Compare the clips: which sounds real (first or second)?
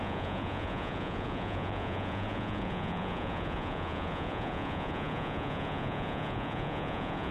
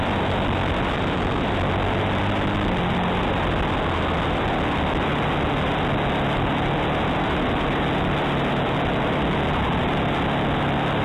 second